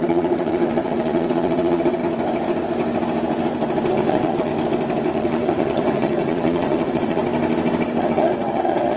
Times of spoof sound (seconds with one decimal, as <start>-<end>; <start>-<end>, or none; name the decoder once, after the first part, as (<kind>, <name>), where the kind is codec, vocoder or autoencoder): 0.0-2.0 (vocoder, WaveNeXt); 3.9-4.5; 5.1-7.2; 8.0-9.0